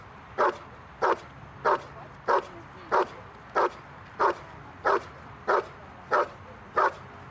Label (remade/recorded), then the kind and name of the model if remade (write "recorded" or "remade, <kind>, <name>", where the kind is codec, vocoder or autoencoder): recorded